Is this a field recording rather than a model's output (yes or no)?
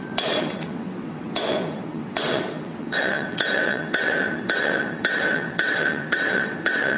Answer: no